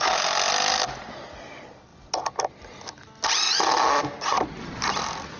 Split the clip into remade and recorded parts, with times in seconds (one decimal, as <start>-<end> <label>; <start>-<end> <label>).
0.0-5.4 recorded